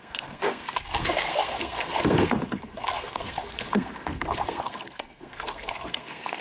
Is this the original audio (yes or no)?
no